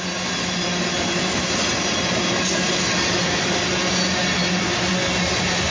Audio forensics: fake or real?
real